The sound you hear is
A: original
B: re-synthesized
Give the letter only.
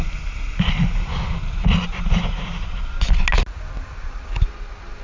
A